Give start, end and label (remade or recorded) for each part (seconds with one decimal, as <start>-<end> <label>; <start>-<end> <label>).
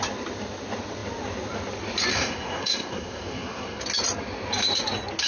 0.0-2.1 recorded; 2.1-3.8 remade; 3.8-5.3 recorded